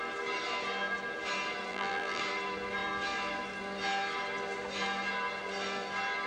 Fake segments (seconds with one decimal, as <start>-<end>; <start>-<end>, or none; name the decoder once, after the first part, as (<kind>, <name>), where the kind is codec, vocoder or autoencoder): 1.7-2.2 (vocoder, BigVGAN v2)